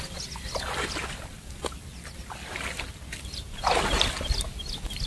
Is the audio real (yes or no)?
yes